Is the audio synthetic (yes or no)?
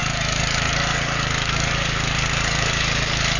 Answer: yes